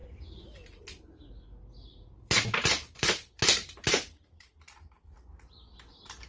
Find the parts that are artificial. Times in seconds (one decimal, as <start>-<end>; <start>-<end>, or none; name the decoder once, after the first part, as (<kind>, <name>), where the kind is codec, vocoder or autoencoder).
1.9-5.7 (vocoder, BigVGAN v2)